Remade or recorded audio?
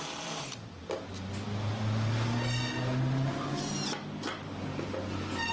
recorded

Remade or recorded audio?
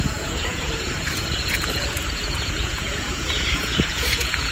remade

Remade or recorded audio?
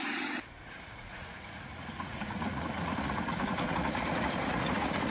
remade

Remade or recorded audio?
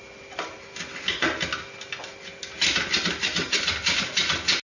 recorded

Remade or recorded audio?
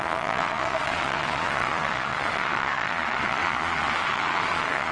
remade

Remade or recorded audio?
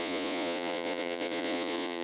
remade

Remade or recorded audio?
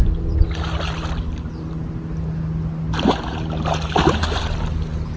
recorded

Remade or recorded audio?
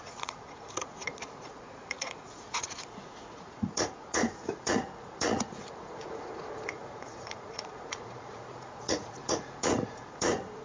remade